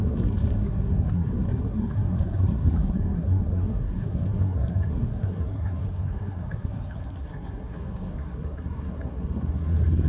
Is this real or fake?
fake